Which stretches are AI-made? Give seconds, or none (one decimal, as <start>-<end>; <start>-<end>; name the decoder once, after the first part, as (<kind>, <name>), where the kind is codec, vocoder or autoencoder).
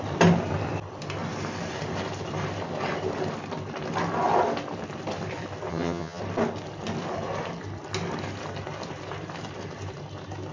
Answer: 5.7-6.2 (vocoder, HiFi-GAN)